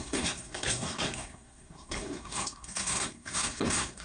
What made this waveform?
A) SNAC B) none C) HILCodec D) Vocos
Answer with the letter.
A